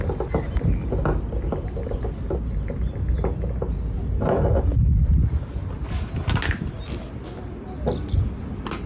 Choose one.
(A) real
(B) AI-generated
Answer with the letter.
A